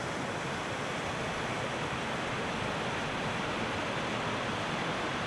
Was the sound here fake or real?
real